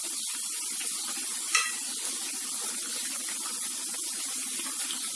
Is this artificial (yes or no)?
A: no